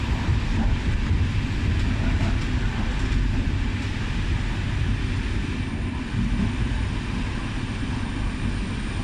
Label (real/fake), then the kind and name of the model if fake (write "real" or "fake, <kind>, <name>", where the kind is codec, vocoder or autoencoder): real